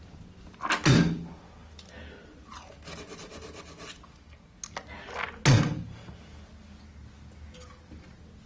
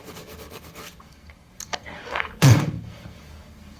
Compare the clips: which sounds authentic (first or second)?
first